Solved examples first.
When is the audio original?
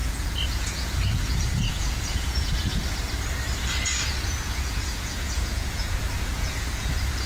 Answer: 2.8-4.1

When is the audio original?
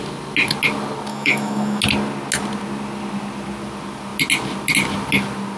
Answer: 0.0-1.1; 1.8-5.6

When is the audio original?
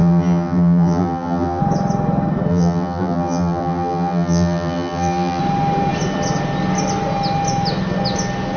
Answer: 1.6-2.5; 5.4-8.6